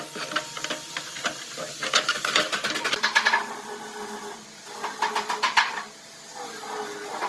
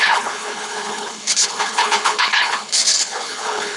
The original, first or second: first